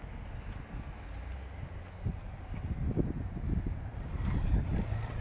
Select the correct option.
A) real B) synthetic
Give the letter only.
A